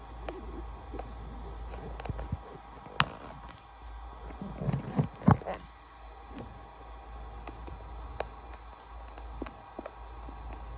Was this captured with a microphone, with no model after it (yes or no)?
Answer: yes